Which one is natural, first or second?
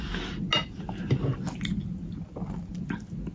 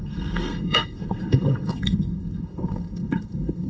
first